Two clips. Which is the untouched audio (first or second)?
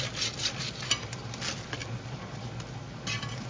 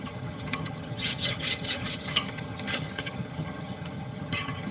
first